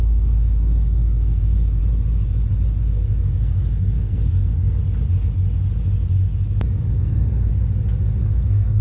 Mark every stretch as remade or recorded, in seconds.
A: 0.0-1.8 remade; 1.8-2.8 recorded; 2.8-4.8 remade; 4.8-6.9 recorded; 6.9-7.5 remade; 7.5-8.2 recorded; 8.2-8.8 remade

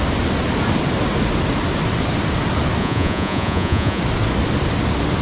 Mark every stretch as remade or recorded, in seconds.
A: 0.0-2.8 recorded; 2.8-4.0 remade; 4.0-5.2 recorded

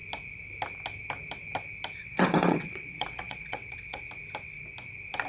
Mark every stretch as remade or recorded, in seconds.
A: 0.0-2.0 recorded; 2.0-4.0 remade; 4.0-5.3 recorded

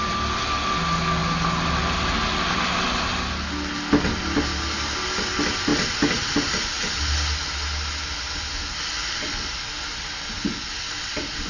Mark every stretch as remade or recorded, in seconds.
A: 0.0-11.5 recorded

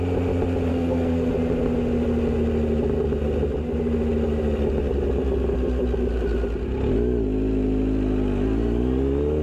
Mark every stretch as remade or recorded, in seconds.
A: 0.0-0.7 recorded; 0.7-1.3 remade; 1.3-9.4 recorded